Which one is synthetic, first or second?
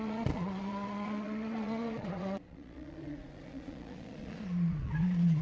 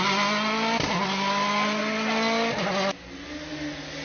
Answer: first